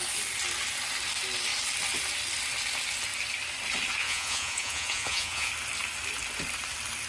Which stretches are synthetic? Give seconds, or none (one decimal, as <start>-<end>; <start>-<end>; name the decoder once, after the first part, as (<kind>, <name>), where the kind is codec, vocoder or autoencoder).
4.0-5.5 (vocoder, Vocos)